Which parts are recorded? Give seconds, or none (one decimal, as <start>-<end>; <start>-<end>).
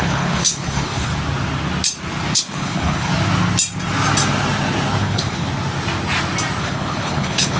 1.1-2.3; 3.1-5.0; 5.5-6.6